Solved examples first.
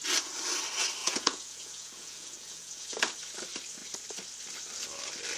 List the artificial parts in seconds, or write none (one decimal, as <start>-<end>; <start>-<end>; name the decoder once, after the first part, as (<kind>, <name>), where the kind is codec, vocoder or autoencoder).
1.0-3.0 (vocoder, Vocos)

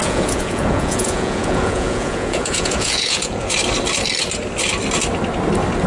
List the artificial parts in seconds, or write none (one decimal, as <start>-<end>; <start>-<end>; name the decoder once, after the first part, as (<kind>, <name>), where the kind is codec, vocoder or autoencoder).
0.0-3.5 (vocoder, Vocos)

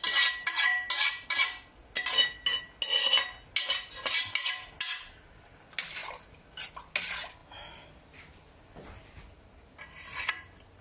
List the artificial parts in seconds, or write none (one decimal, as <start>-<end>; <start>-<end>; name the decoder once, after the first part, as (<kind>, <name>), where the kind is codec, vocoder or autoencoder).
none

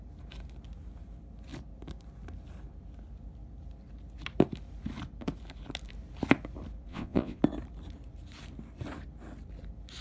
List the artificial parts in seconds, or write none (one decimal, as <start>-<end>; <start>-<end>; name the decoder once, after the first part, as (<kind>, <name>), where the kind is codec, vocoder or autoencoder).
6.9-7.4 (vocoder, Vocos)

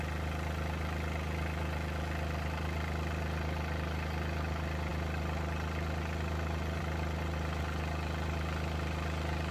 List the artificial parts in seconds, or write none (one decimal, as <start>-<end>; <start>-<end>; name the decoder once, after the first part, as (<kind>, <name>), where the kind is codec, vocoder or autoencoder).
none